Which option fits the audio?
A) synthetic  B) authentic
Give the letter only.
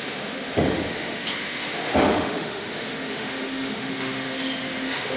A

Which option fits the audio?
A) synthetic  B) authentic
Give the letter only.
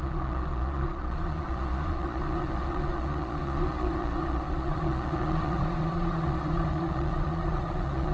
A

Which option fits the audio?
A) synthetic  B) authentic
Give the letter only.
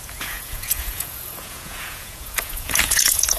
A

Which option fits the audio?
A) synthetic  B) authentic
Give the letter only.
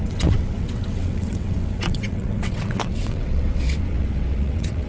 A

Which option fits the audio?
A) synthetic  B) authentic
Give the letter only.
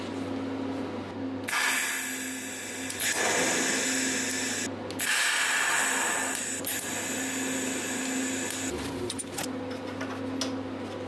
B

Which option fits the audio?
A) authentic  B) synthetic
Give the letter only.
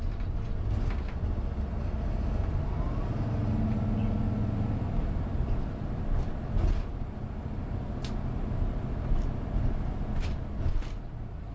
A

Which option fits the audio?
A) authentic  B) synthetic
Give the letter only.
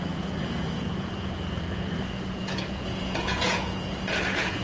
B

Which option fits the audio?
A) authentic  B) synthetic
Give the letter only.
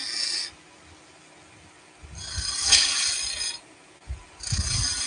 A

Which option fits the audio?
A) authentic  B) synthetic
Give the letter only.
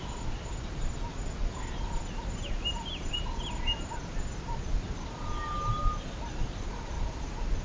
A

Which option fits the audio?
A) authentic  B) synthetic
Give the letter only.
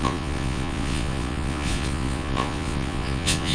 B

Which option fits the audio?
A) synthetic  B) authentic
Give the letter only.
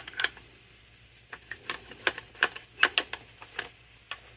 B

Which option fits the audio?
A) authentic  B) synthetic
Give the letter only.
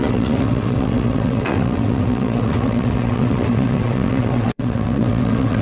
B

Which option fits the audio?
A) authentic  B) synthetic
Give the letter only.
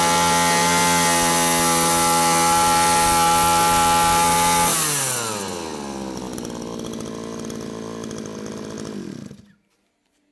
A